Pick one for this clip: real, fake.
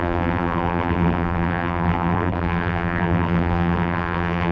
fake